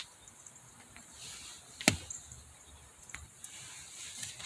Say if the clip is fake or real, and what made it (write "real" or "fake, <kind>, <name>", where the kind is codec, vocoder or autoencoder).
real